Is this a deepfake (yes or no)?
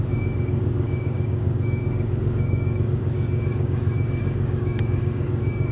yes